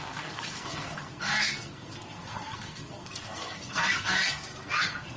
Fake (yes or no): yes